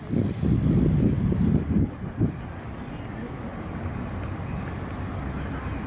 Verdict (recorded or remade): recorded